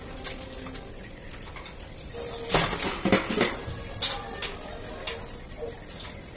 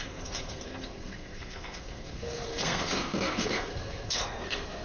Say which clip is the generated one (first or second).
second